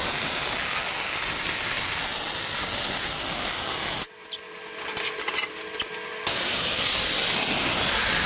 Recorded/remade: recorded